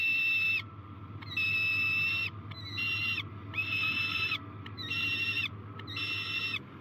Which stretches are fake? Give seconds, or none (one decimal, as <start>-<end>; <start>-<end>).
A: 3.6-4.3